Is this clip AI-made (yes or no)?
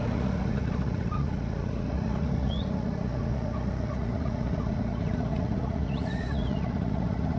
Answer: yes